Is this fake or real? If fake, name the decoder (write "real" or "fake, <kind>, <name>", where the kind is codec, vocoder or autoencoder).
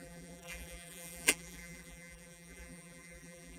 fake, vocoder, BigVGAN v2